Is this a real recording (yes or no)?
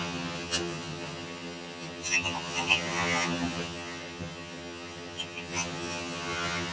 no